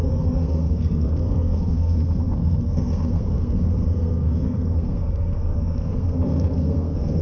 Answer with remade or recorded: remade